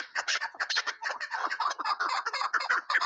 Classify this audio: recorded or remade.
remade